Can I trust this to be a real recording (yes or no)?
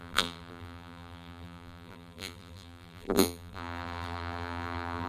no